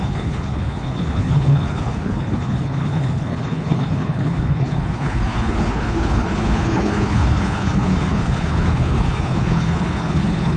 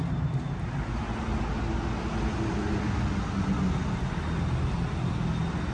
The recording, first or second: second